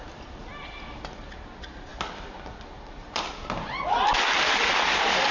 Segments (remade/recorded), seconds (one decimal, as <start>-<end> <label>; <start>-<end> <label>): 0.0-5.3 recorded